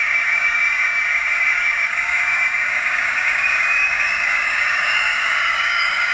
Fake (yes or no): yes